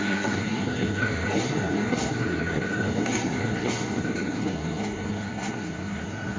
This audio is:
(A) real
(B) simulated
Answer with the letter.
B